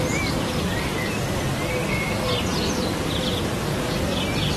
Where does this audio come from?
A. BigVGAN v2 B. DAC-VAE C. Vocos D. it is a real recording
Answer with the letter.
D